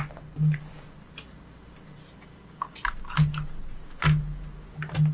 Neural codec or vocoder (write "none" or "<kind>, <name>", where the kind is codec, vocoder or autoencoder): none